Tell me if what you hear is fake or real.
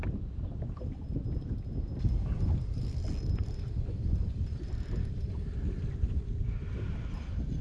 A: real